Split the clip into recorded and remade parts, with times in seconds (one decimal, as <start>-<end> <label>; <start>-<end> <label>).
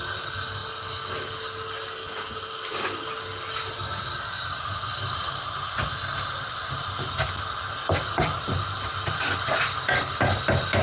0.0-4.9 recorded; 4.9-7.3 remade; 7.3-10.8 recorded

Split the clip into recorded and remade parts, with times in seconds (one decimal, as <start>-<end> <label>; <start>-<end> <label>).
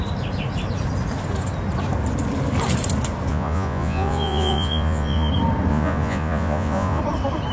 0.0-3.3 recorded; 3.3-5.3 remade; 5.3-5.7 recorded; 5.7-7.0 remade; 7.0-7.5 recorded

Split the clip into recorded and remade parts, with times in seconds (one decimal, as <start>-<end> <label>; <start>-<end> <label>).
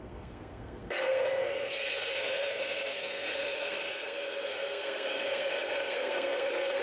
0.0-6.8 remade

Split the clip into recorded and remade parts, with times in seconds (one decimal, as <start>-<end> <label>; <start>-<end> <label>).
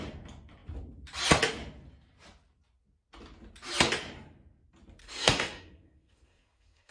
0.0-5.0 recorded; 5.0-6.9 remade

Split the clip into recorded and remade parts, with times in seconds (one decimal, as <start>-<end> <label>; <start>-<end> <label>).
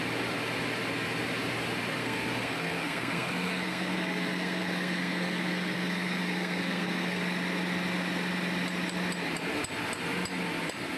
0.0-2.0 recorded; 2.0-7.2 remade; 7.2-11.0 recorded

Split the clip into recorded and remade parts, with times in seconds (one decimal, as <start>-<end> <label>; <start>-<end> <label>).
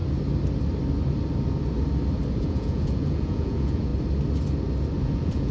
0.0-2.3 recorded; 2.3-3.9 remade; 3.9-5.0 recorded; 5.0-5.5 remade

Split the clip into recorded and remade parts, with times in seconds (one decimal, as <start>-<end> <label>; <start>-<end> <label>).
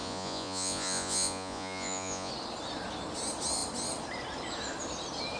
0.0-2.3 remade; 2.3-5.4 recorded